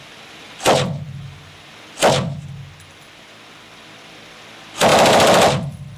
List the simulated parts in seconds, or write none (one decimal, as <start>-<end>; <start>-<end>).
none